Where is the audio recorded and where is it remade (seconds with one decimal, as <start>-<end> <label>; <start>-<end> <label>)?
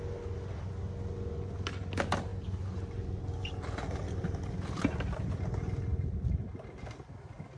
0.0-7.6 recorded